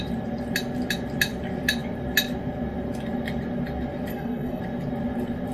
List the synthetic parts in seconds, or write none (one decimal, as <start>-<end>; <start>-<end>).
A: 4.1-4.6